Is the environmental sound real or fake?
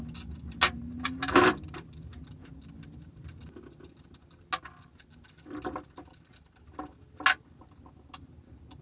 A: real